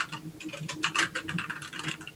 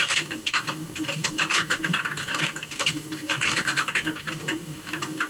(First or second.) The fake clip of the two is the second